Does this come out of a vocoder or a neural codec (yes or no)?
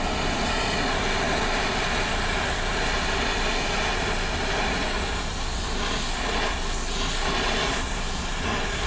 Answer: yes